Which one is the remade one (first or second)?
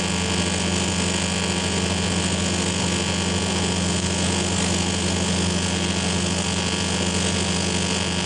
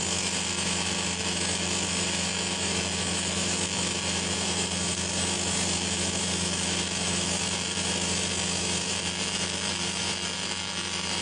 second